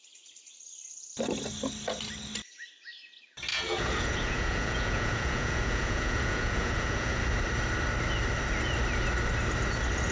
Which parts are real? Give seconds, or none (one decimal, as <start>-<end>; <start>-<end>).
0.0-3.5; 7.2-10.1